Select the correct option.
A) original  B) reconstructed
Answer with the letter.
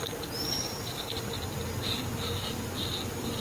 A